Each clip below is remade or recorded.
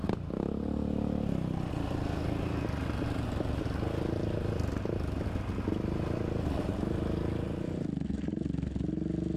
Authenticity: recorded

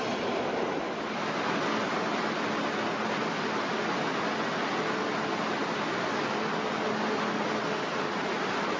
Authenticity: recorded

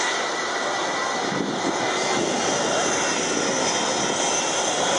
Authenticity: recorded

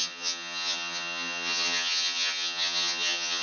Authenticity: remade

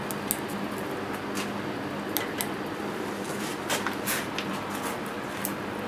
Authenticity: recorded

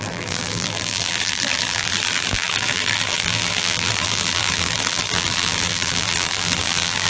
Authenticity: remade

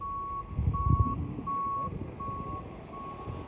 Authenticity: recorded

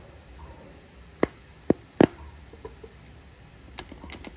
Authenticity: recorded